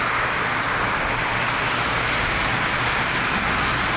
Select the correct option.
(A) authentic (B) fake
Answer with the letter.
A